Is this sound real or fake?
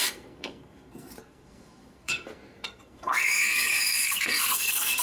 fake